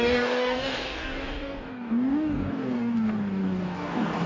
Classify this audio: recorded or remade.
remade